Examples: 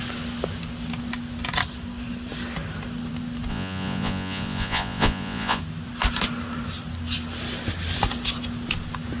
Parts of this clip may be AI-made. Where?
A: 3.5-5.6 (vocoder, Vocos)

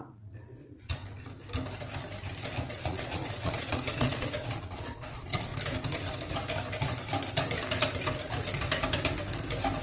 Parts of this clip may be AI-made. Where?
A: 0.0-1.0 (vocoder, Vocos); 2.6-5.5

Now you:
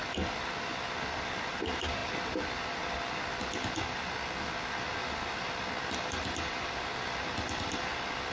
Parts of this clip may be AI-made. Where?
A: none

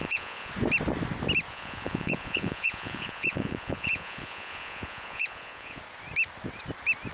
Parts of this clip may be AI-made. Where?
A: 0.0-0.5 (vocoder, Vocos); 1.5-5.8

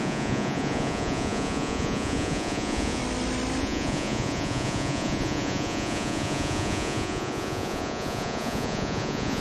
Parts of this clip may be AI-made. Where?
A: 0.0-3.0 (vocoder, Vocos); 3.6-9.4

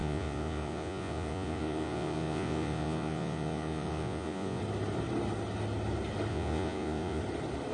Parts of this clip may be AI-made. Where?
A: 0.0-4.6 (vocoder, Vocos); 6.3-7.2

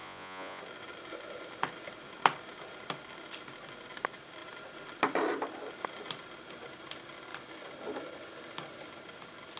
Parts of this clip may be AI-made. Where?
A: 0.0-0.6 (vocoder, Vocos)

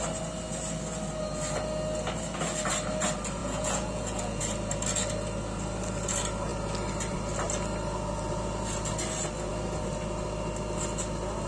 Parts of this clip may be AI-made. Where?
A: 3.4-4.4 (vocoder, Vocos)